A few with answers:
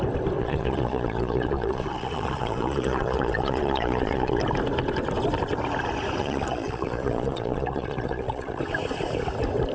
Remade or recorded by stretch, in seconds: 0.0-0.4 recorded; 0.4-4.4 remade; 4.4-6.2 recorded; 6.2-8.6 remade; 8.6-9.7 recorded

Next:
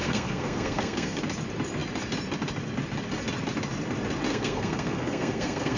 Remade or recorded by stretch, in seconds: 0.0-1.2 remade; 1.2-4.3 recorded; 4.3-5.8 remade

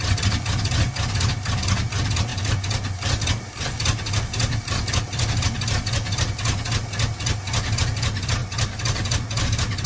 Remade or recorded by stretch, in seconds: 0.0-9.9 recorded